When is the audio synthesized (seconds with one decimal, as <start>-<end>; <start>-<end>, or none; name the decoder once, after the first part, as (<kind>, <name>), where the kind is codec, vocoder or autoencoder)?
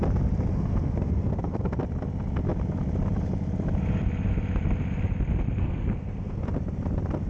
0.5-1.7 (codec, SNAC); 5.6-6.4